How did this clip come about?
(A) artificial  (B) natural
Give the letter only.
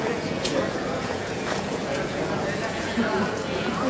A